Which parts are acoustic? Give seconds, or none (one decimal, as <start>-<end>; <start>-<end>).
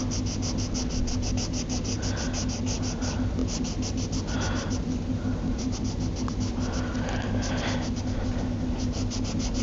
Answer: 0.0-9.6